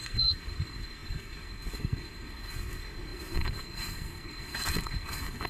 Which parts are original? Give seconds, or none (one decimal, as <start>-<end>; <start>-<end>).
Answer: none